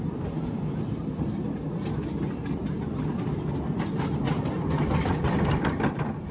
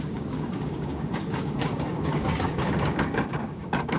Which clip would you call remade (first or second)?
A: second